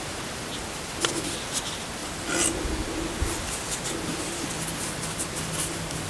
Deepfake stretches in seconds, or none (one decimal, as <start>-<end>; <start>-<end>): none